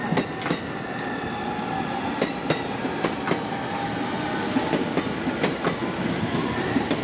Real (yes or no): yes